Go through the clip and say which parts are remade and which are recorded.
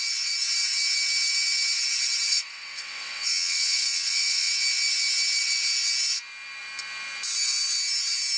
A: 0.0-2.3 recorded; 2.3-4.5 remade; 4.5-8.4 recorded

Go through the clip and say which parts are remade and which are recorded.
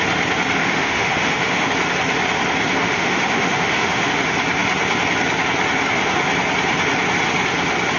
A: 0.0-0.6 recorded; 0.6-1.7 remade; 1.7-2.8 recorded; 2.8-4.1 remade; 4.1-8.0 recorded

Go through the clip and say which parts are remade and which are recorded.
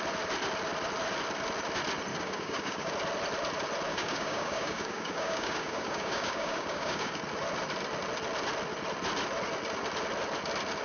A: 0.0-2.1 recorded; 2.1-2.9 remade; 2.9-3.9 recorded; 3.9-7.2 remade; 7.2-10.8 recorded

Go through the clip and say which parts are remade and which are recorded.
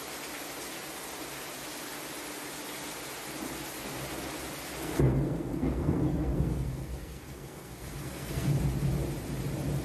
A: 0.0-4.8 recorded; 4.8-8.6 remade; 8.6-9.8 recorded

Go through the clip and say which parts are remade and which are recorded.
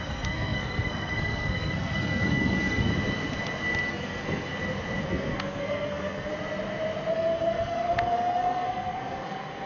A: 0.0-2.9 remade; 2.9-3.9 recorded; 3.9-4.5 remade; 4.5-5.0 recorded; 5.0-6.3 remade; 6.3-7.1 recorded; 7.1-9.7 remade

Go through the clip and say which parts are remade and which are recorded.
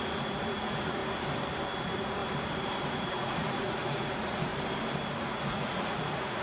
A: 0.0-1.0 remade; 1.0-1.8 recorded; 1.8-2.2 remade; 2.2-2.8 recorded; 2.8-4.5 remade; 4.5-5.2 recorded; 5.2-6.4 remade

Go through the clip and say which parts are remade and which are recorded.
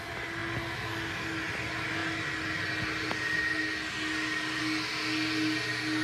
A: 0.0-6.0 recorded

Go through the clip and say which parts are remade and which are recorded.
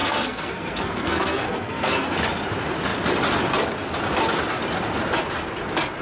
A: 0.0-2.2 remade; 2.2-6.0 recorded